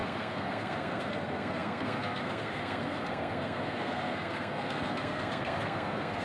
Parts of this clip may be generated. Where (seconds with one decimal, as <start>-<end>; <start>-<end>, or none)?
0.0-6.2